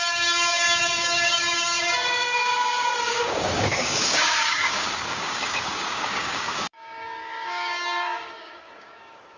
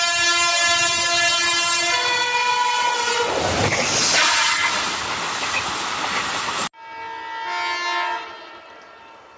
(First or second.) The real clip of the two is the second